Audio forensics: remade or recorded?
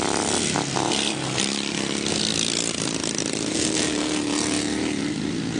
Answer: recorded